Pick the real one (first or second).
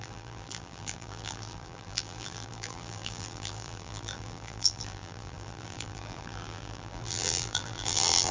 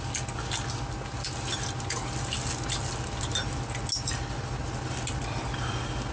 second